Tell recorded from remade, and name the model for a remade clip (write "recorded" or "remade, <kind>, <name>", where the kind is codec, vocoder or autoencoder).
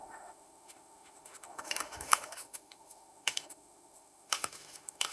remade, autoencoder, DAC-VAE